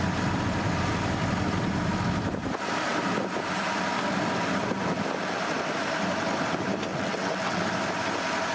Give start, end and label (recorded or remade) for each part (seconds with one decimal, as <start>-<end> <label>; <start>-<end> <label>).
0.0-6.9 recorded; 6.9-7.6 remade; 7.6-8.5 recorded